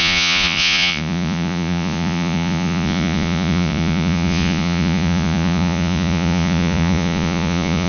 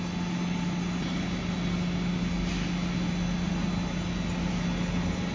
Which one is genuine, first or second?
second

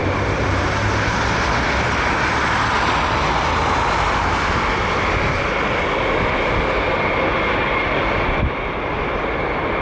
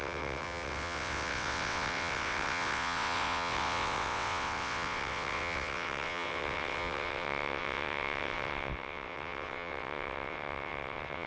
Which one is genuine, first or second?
first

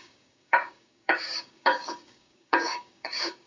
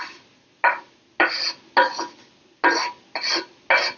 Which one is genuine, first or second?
second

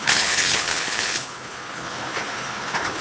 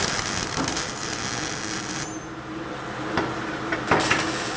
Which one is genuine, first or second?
second